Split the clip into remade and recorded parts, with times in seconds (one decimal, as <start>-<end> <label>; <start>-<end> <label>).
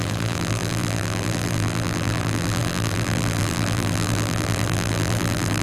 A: 0.0-5.6 remade